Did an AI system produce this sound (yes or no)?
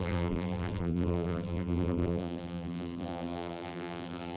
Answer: yes